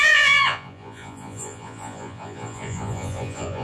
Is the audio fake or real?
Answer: fake